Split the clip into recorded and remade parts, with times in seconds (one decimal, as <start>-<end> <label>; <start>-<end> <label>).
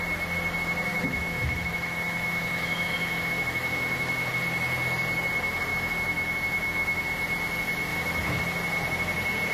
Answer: 0.0-0.9 recorded; 0.9-4.3 remade; 4.3-5.7 recorded; 5.7-7.0 remade; 7.0-7.9 recorded; 7.9-8.4 remade; 8.4-9.5 recorded